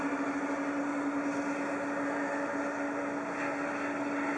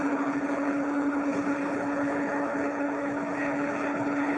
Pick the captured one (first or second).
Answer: first